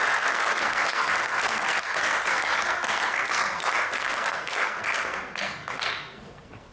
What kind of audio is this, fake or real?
fake